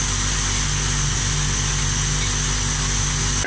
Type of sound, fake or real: real